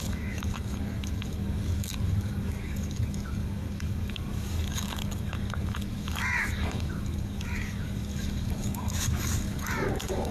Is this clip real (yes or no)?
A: no